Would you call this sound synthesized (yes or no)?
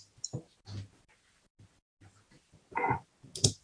no